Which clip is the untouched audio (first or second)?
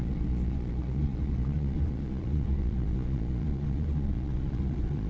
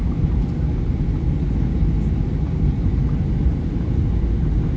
second